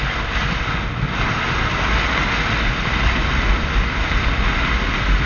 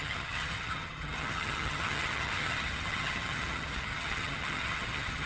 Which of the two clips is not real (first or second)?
second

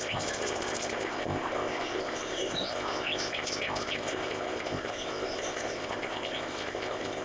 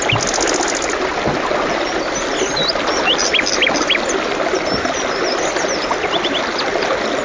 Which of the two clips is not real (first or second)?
first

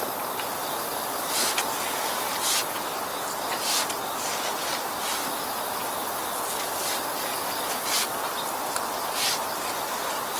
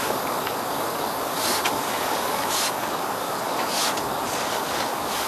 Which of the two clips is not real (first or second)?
second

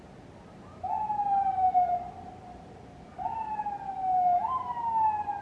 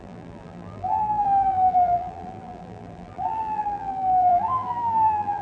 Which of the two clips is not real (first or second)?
second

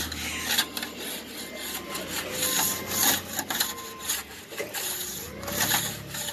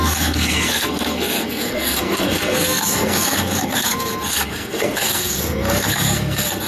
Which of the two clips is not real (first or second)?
second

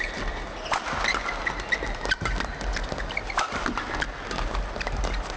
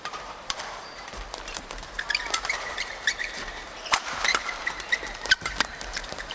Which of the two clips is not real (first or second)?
second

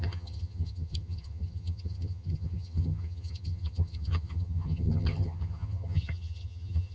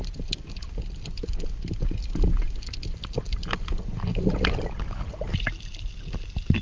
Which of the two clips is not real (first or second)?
first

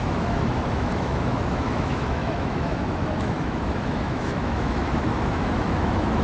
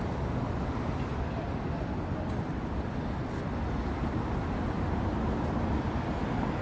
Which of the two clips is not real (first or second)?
first